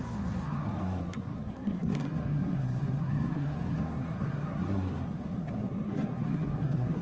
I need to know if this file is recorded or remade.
remade